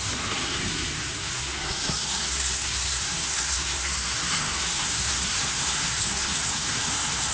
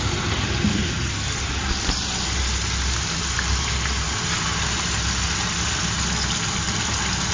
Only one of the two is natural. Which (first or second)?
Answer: second